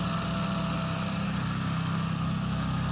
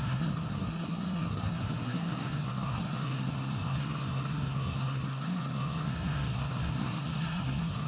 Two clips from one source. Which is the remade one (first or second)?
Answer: second